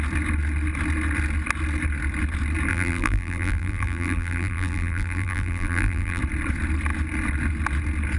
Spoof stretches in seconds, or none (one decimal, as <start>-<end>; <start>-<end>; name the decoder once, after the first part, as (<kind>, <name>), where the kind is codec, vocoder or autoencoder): 2.7-6.2 (vocoder, BigVGAN v2)